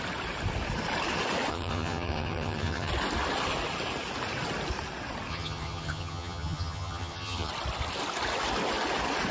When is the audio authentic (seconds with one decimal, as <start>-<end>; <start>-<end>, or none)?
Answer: 0.0-1.5; 2.9-5.3; 7.5-9.3